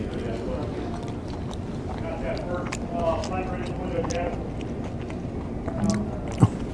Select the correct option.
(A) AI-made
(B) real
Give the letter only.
B